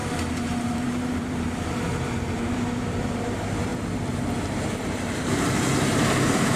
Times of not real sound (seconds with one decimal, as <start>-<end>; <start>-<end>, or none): 0.0-3.7; 4.8-6.6